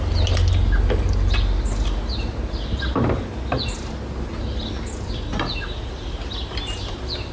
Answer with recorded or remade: recorded